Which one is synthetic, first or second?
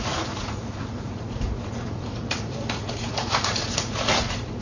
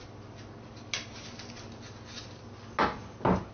first